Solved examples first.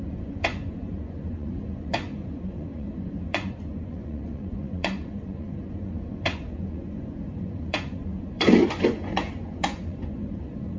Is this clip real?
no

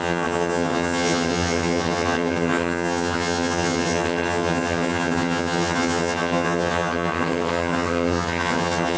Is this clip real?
no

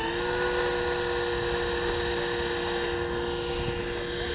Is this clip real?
yes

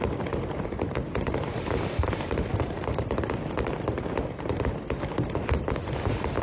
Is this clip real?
no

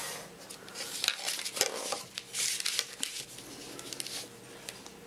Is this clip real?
yes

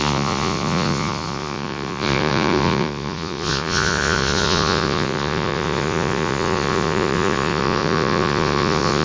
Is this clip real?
no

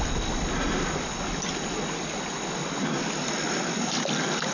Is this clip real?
yes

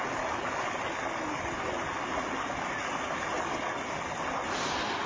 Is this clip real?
yes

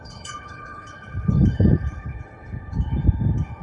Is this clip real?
no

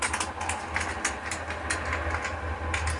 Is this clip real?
yes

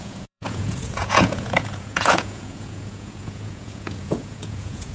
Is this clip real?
no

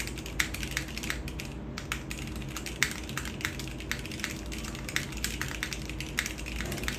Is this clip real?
yes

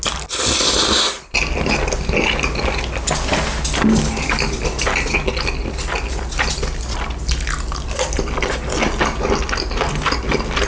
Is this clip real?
yes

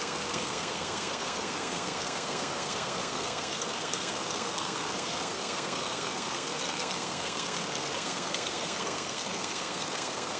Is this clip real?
no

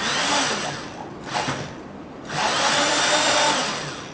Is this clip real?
yes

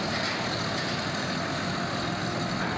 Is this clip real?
yes